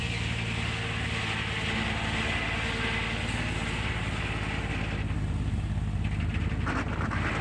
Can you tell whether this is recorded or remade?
recorded